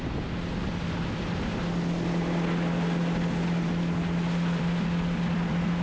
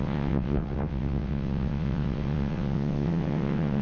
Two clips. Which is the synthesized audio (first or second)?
second